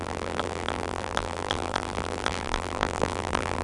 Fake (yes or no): yes